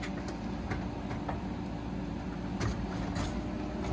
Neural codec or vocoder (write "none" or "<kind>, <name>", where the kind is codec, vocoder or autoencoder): none